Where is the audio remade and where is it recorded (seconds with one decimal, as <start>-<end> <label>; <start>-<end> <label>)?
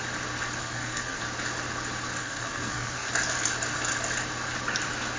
0.0-0.6 recorded; 0.6-1.2 remade; 1.2-2.2 recorded; 2.2-3.1 remade; 3.1-5.2 recorded